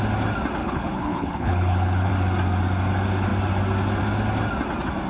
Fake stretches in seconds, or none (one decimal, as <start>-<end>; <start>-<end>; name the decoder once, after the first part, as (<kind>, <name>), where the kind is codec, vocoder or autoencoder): 0.6-2.1 (codec, HILCodec)